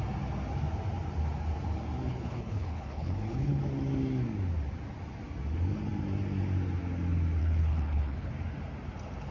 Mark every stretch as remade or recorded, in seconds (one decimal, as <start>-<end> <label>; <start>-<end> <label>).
0.0-2.1 recorded; 2.1-3.6 remade; 3.6-7.4 recorded; 7.4-8.3 remade; 8.3-9.3 recorded